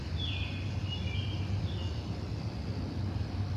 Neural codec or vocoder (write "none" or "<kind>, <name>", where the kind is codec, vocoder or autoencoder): none